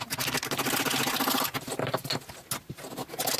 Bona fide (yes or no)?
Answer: yes